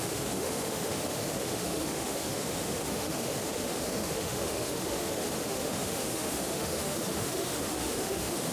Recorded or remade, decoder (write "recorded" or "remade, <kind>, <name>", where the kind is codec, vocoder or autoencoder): remade, autoencoder, DAC-VAE